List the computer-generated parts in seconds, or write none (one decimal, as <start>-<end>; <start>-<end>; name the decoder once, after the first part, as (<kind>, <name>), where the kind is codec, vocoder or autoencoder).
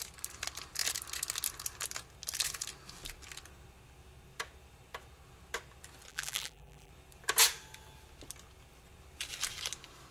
6.1-6.9 (vocoder, BigVGAN v2)